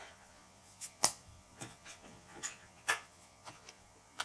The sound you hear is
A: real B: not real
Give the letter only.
B